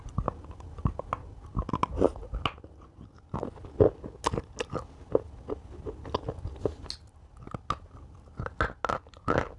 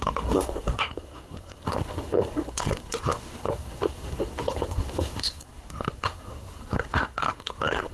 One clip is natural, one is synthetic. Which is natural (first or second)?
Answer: first